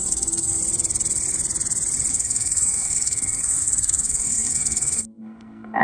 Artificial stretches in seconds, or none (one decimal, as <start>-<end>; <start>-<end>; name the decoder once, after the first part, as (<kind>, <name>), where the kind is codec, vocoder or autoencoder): 0.0-0.6 (codec, SNAC); 2.1-5.8